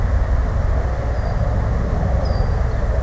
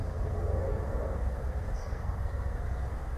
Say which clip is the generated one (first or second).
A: second